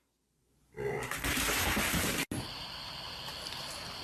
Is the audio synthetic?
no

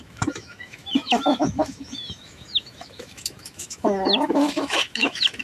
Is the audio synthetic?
yes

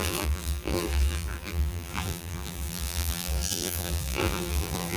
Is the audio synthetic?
yes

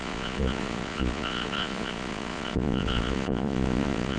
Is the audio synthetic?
yes